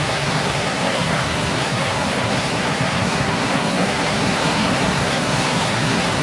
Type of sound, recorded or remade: remade